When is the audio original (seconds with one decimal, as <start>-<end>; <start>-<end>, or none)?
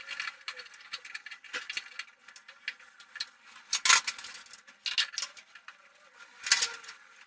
0.0-7.3